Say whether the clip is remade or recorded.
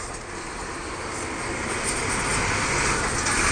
recorded